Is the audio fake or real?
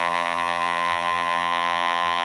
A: fake